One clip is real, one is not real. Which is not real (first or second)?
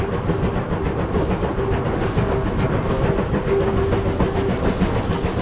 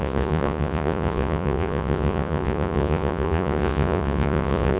second